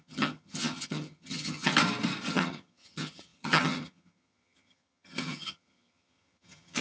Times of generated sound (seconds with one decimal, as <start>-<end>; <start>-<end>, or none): 0.0-1.7; 2.3-6.8